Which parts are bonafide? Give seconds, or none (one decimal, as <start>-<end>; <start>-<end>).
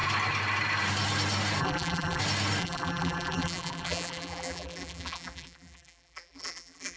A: 0.0-1.6; 2.2-2.6